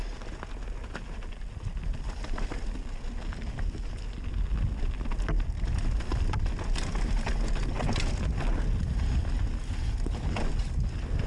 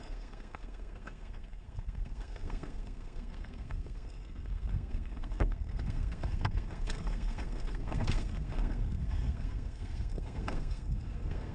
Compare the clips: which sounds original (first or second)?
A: first